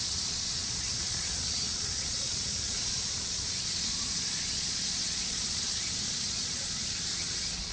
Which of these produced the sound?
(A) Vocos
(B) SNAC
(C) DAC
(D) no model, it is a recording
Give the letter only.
A